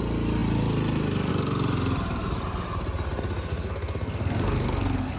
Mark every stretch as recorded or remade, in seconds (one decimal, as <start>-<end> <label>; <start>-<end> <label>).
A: 0.0-3.5 recorded; 3.5-5.2 remade